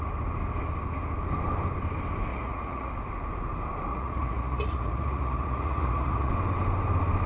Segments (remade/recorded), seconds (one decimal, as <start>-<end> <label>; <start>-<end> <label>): 0.0-2.3 recorded; 2.3-2.9 remade; 2.9-3.9 recorded; 3.9-6.3 remade; 6.3-7.3 recorded